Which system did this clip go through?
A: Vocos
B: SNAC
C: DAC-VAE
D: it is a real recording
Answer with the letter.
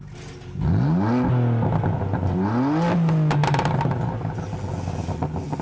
D